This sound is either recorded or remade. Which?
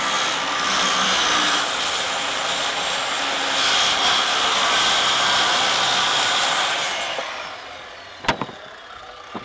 recorded